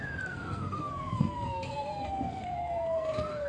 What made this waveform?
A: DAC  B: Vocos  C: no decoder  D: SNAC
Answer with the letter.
D